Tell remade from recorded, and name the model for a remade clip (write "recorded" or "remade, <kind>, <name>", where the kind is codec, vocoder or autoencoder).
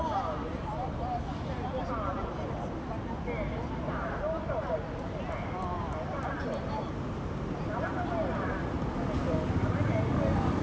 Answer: recorded